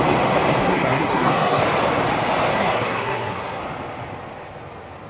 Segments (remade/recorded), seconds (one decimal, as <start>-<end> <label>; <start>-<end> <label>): 0.0-0.6 recorded; 0.6-1.6 remade; 1.6-2.5 recorded; 2.5-3.6 remade; 3.6-5.1 recorded